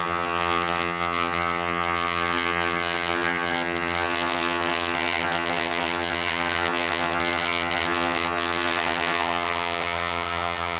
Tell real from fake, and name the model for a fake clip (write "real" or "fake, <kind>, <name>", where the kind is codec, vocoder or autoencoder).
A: fake, vocoder, HiFi-GAN